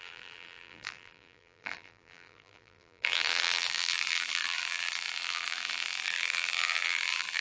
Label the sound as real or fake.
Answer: fake